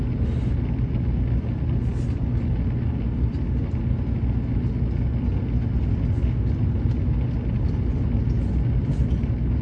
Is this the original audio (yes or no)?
yes